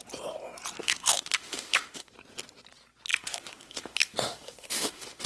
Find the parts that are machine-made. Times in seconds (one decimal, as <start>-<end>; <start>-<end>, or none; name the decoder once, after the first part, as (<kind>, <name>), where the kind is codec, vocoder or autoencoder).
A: 0.8-2.1 (autoencoder, DAC-VAE); 3.1-5.3